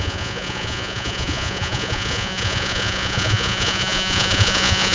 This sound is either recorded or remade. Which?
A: remade